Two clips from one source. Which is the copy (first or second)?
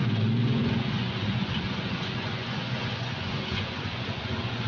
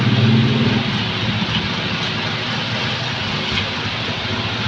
first